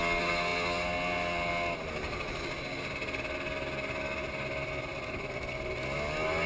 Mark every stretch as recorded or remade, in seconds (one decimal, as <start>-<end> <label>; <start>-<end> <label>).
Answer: 0.0-6.5 recorded